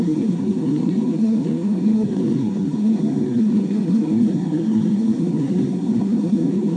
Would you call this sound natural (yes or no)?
no